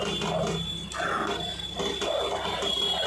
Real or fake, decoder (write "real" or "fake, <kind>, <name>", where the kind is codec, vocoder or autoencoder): real